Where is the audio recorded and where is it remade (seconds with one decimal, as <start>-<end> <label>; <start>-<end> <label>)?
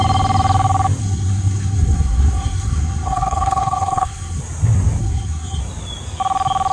0.0-1.0 recorded; 1.0-4.4 remade; 4.4-5.0 recorded; 5.0-5.6 remade; 5.6-6.7 recorded